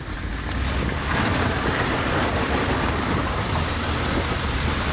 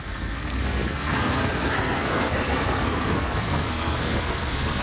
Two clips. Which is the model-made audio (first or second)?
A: second